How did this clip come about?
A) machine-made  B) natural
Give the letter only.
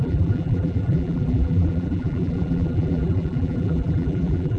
A